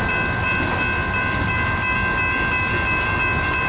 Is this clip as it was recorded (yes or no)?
yes